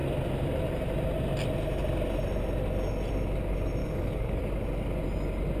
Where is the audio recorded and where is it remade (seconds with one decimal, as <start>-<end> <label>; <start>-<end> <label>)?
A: 0.0-3.8 recorded; 3.8-4.4 remade; 4.4-5.6 recorded